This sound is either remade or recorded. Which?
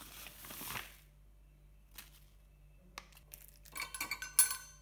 recorded